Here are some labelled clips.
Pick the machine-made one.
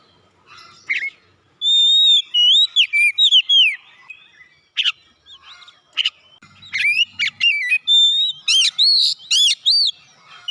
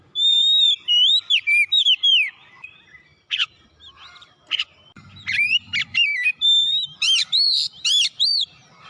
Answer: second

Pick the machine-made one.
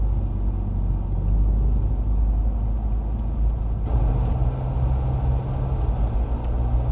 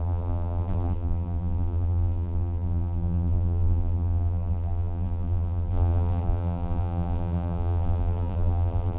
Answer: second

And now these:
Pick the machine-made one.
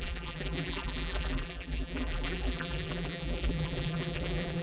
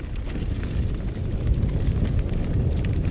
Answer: first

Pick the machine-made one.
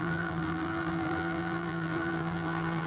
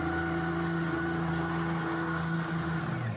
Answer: first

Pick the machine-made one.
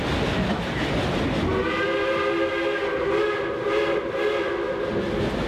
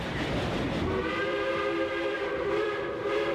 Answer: second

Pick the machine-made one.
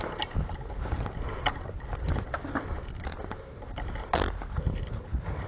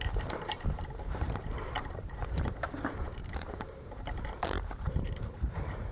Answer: second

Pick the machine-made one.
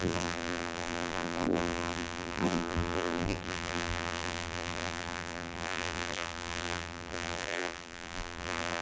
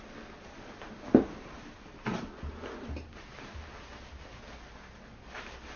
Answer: first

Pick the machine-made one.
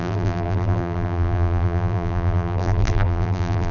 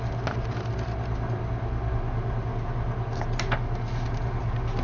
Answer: first